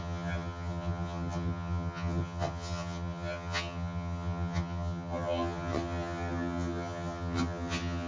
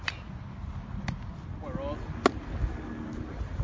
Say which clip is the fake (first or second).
first